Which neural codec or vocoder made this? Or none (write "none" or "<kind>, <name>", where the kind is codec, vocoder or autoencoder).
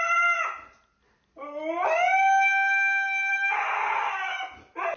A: none